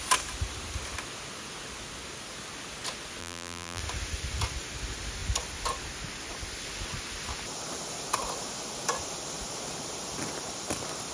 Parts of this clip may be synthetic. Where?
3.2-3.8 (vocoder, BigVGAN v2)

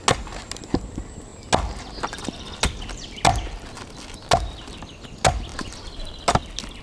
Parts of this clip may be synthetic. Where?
none

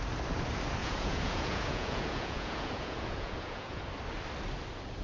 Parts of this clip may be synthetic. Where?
0.8-3.8 (vocoder, Vocos)

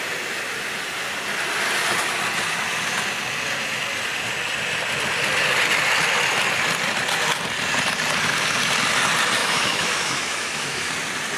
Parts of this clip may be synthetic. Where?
9.4-10.9 (autoencoder, DAC-VAE)

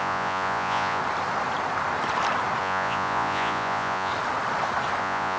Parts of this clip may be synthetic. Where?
0.0-1.0 (vocoder, Vocos); 2.6-4.1; 5.0-5.4

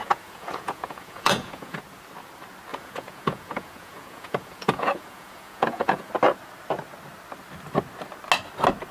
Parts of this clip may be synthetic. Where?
0.0-1.8 (vocoder, Vocos); 2.7-6.1

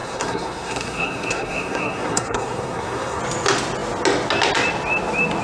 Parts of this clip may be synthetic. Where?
0.0-3.2 (codec, SNAC)

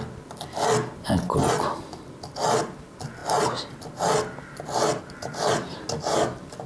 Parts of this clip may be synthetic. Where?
none